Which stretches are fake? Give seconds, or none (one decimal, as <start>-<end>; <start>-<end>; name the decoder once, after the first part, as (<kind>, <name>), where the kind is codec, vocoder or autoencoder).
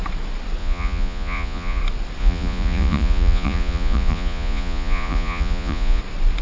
0.6-1.8 (vocoder, Vocos); 2.2-6.0